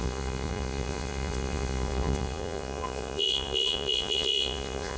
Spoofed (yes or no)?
yes